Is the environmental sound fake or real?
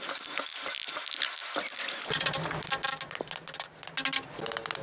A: real